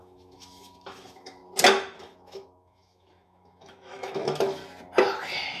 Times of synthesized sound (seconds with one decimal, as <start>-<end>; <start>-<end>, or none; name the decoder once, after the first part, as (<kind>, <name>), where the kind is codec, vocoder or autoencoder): 0.0-1.4 (autoencoder, DAC-VAE); 2.0-4.6